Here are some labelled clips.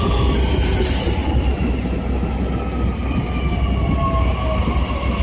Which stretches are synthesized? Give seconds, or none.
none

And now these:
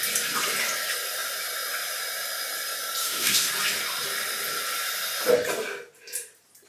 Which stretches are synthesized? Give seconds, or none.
3.0-3.5 (autoencoder, DAC-VAE)

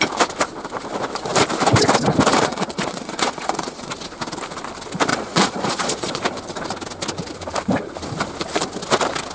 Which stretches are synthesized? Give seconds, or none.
2.3-3.9 (vocoder, Vocos); 5.1-6.1

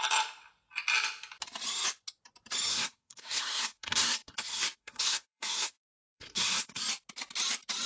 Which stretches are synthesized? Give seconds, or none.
2.7-6.8 (codec, SNAC)